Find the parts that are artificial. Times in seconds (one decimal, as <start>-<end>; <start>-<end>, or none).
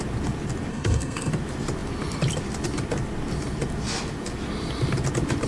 0.7-1.3